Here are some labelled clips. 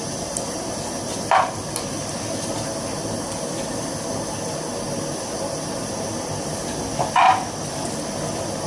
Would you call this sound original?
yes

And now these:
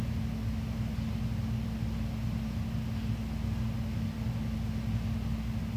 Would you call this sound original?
yes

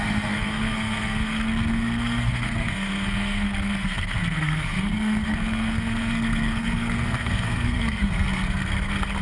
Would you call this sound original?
no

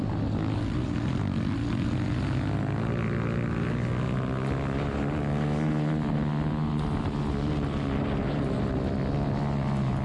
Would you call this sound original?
yes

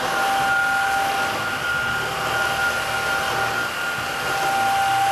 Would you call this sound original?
yes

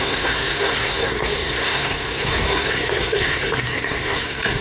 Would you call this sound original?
no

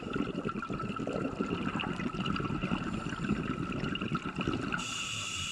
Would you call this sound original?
yes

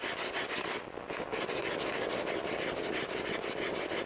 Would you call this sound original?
yes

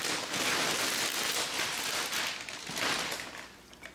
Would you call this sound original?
yes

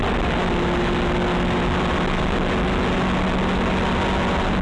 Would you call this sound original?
yes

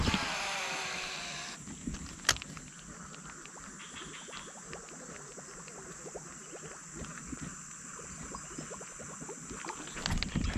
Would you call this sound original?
yes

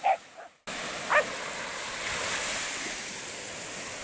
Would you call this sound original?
yes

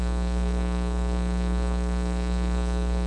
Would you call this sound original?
no